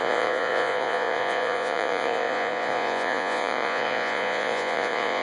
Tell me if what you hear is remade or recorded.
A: remade